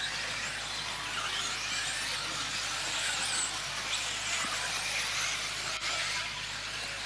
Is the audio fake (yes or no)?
no